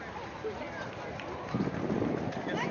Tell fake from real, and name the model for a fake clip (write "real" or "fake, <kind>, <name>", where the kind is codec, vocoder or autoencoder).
real